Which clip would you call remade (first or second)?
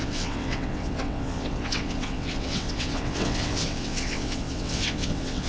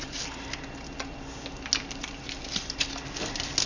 first